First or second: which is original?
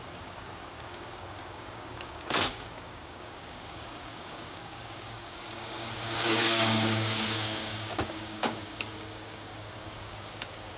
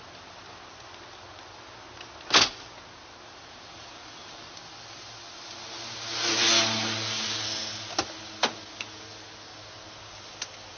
second